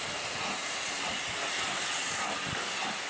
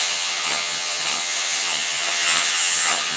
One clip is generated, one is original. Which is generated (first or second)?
second